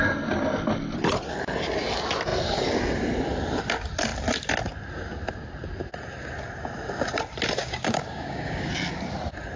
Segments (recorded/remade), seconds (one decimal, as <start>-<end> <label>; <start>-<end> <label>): 0.0-7.6 recorded; 7.6-8.7 remade; 8.7-9.6 recorded

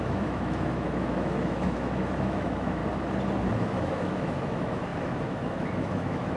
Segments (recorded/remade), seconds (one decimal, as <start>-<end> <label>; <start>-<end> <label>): 0.0-2.8 remade; 2.8-3.5 recorded; 3.5-6.4 remade

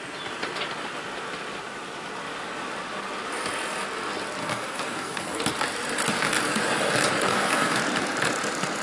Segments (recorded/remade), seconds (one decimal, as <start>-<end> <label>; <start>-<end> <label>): 0.0-4.4 recorded; 4.4-5.4 remade; 5.4-7.3 recorded; 7.3-7.8 remade; 7.8-8.8 recorded

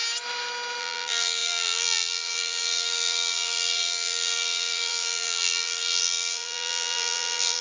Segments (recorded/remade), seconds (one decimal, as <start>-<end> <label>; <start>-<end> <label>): 0.0-0.8 recorded; 0.8-7.6 remade